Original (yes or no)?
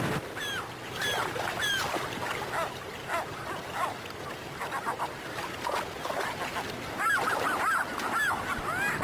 yes